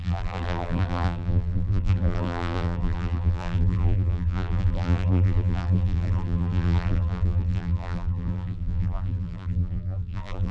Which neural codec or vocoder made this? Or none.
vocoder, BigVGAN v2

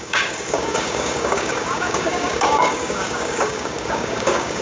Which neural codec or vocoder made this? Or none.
codec, DAC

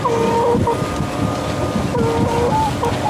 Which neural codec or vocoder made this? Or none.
none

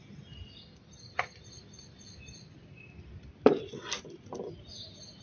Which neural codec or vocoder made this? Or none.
none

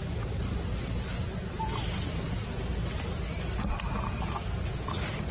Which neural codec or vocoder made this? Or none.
none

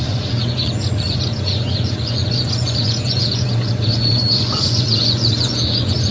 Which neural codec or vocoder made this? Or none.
vocoder, Vocos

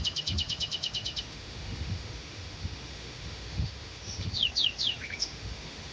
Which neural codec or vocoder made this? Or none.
autoencoder, DAC-VAE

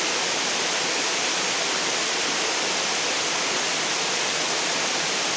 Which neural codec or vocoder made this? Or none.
none